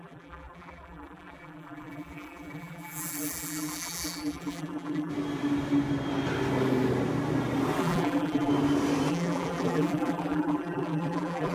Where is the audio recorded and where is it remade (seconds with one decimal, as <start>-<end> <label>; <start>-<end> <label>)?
0.0-5.1 remade; 5.1-7.8 recorded; 7.8-8.5 remade; 8.5-9.1 recorded; 9.1-11.5 remade